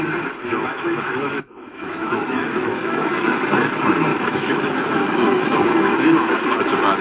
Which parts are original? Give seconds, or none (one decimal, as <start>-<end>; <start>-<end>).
0.0-0.5; 3.4-4.1; 6.5-7.0